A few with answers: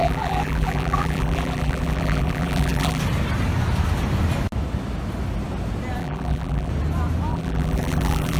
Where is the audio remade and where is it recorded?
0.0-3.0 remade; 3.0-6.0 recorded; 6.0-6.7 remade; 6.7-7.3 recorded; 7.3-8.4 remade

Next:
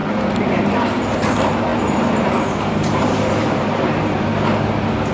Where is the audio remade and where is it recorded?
0.0-4.3 remade; 4.3-5.1 recorded

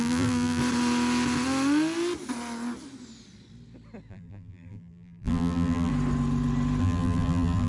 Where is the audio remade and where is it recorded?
0.0-0.6 remade; 0.6-4.1 recorded; 4.1-5.9 remade; 5.9-6.8 recorded; 6.8-7.7 remade

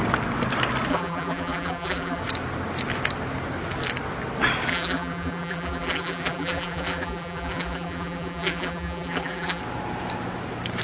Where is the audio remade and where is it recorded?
0.0-0.9 recorded; 0.9-2.2 remade; 2.2-4.7 recorded; 4.7-9.6 remade; 9.6-10.8 recorded

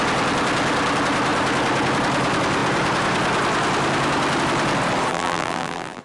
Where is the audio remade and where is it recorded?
0.0-5.1 recorded; 5.1-6.0 remade